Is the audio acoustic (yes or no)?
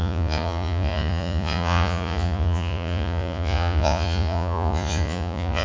no